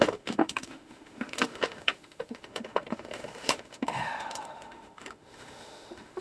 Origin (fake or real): fake